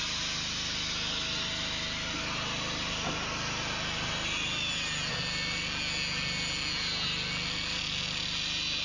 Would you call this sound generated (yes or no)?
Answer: no